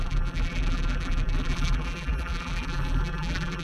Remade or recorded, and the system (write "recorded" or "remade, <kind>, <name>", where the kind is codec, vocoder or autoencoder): remade, vocoder, BigVGAN v2